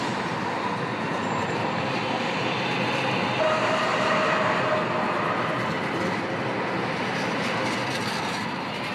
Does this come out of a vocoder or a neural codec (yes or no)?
no